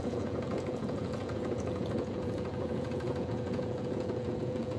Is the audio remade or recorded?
remade